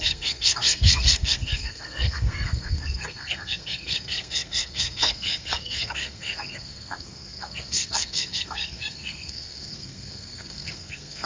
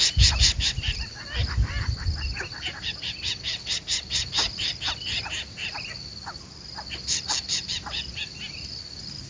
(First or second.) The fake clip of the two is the first